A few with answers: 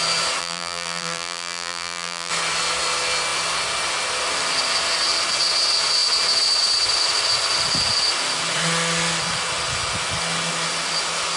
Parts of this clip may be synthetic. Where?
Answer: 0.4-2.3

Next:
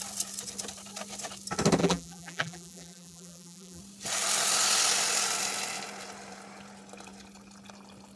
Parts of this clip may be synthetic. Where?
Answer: 1.8-3.8

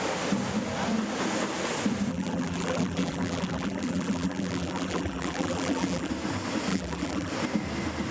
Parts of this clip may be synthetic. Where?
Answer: 2.1-6.1; 6.7-7.3

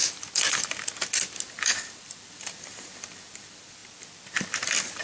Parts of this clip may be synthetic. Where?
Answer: 1.5-3.8

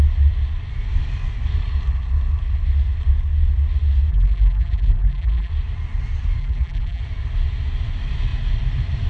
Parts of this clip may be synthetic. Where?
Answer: 4.1-5.5; 6.4-7.0

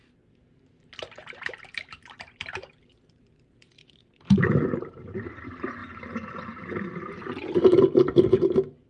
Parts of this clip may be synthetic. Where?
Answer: 0.0-8.9